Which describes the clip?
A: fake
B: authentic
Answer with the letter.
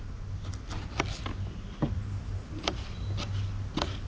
B